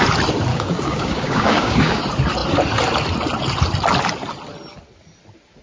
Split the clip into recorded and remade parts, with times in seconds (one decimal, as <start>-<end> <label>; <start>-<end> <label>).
0.0-0.5 recorded; 0.5-2.0 remade; 2.0-5.6 recorded